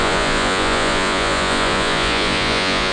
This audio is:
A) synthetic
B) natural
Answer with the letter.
A